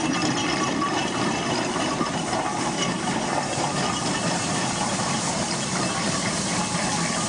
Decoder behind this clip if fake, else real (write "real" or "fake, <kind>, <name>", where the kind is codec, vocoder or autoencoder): fake, vocoder, BigVGAN v2